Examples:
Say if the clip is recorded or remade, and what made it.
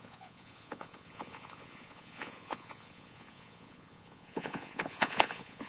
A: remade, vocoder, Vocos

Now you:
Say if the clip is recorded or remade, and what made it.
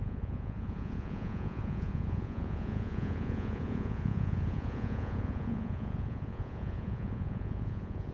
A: remade, vocoder, Vocos